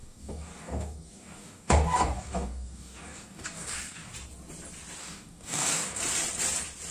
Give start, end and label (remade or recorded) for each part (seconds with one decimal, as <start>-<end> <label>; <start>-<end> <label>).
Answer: 0.0-4.1 remade; 4.1-5.0 recorded; 5.0-6.0 remade; 6.0-6.9 recorded

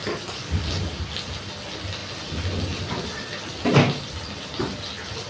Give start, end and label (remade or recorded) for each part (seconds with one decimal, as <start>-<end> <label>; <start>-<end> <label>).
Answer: 0.0-0.6 remade; 0.6-5.3 recorded

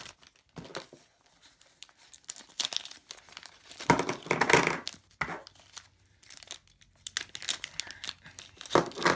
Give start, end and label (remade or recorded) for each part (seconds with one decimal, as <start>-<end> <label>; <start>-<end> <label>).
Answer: 0.0-9.2 recorded

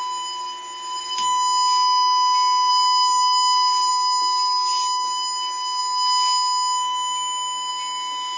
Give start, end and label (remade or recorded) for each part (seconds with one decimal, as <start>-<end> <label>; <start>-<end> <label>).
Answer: 0.0-2.7 recorded; 2.7-3.9 remade; 3.9-8.4 recorded

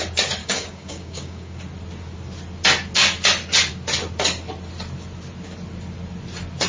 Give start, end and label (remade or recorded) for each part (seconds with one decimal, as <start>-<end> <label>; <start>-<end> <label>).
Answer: 0.0-0.4 recorded; 0.4-1.6 remade; 1.6-6.7 recorded